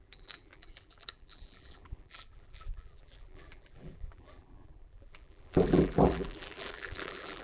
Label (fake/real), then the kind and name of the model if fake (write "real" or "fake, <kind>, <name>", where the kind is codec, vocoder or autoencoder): fake, vocoder, BigVGAN v2